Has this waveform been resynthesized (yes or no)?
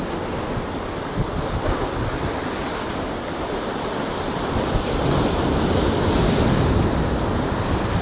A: no